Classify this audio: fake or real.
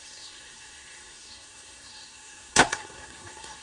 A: fake